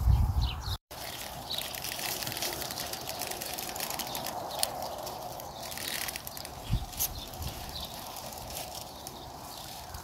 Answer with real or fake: fake